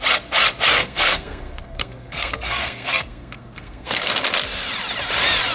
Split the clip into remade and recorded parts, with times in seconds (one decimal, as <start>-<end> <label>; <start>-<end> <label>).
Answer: 0.0-0.8 recorded; 0.8-4.1 remade; 4.1-5.5 recorded

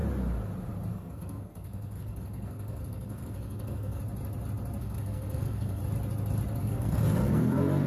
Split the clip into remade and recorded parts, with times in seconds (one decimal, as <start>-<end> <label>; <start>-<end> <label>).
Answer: 0.0-0.9 recorded; 0.9-4.0 remade; 4.0-4.8 recorded; 4.8-5.8 remade; 5.8-6.6 recorded; 6.6-7.9 remade

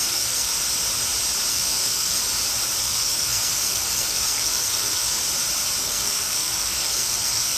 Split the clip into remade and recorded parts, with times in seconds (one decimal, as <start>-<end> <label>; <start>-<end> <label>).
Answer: 0.0-0.5 remade; 0.5-1.5 recorded; 1.5-2.2 remade; 2.2-2.8 recorded; 2.8-5.2 remade; 5.2-5.8 recorded; 5.8-7.6 remade

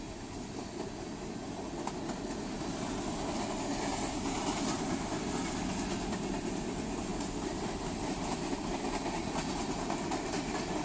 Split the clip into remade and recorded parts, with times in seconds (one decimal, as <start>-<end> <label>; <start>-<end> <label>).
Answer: 0.0-10.8 recorded